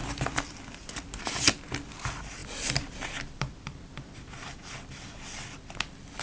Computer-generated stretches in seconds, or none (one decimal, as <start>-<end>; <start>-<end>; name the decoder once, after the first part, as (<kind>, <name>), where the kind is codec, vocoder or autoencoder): 2.4-6.2 (vocoder, BigVGAN v2)